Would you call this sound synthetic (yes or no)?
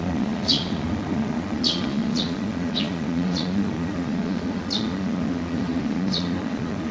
yes